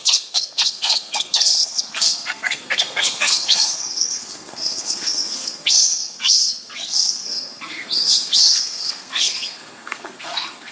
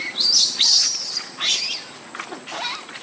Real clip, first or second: second